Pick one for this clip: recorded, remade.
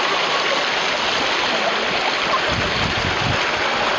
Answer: recorded